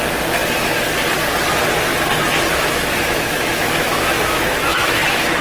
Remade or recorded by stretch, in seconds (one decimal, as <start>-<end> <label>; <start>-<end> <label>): 0.0-2.5 recorded; 2.5-5.4 remade